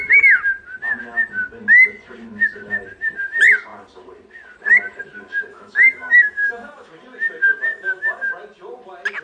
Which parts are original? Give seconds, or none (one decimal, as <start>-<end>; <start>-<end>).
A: 0.0-5.5; 6.9-7.7; 8.3-9.2